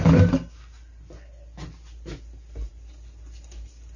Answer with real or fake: real